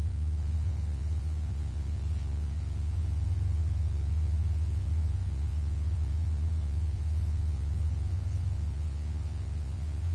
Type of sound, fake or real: fake